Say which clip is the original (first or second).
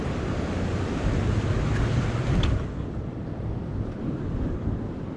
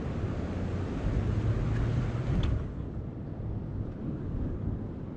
second